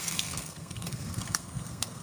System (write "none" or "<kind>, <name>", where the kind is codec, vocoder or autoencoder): codec, SNAC